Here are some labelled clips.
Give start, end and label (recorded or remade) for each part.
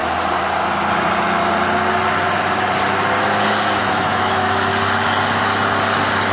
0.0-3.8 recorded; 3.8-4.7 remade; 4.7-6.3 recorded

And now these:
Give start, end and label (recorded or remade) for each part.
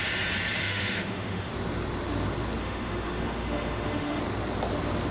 0.0-0.6 recorded; 0.6-1.5 remade; 1.5-2.6 recorded; 2.6-4.2 remade; 4.2-5.1 recorded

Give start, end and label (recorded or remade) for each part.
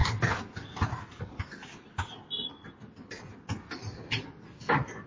0.0-5.1 recorded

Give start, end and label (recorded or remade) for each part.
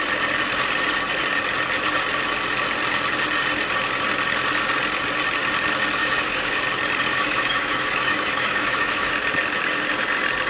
0.0-6.0 recorded; 6.0-6.6 remade; 6.6-7.1 recorded; 7.1-9.1 remade; 9.1-10.5 recorded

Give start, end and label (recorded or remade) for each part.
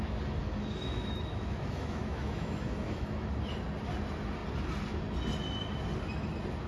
0.0-0.4 recorded; 0.4-3.3 remade; 3.3-6.7 recorded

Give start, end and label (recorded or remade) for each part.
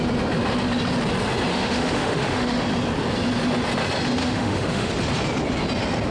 0.0-1.5 recorded; 1.5-2.6 remade; 2.6-4.2 recorded; 4.2-4.9 remade; 4.9-6.1 recorded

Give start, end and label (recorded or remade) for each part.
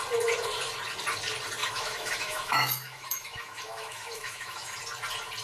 0.0-1.6 recorded; 1.6-4.8 remade; 4.8-5.4 recorded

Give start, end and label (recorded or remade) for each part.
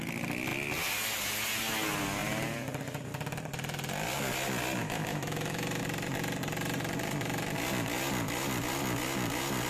0.0-4.8 recorded; 4.8-5.8 remade; 5.8-9.7 recorded